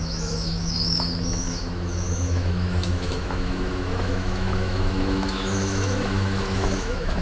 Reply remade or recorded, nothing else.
remade